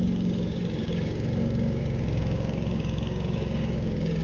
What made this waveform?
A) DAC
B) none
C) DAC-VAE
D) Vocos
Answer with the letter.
A